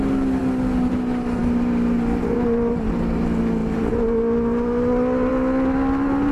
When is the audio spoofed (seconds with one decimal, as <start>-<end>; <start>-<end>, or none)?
none